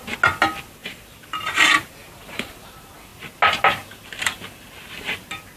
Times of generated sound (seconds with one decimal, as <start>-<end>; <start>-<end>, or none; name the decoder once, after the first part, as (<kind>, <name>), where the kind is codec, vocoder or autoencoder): 0.8-2.5 (vocoder, BigVGAN v2)